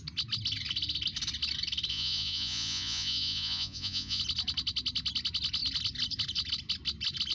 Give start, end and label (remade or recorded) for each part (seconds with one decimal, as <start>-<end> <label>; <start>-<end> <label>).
0.0-1.9 recorded; 1.9-4.2 remade; 4.2-7.3 recorded